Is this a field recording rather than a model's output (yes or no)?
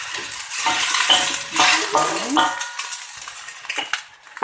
yes